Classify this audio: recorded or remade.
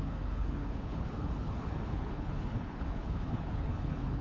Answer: remade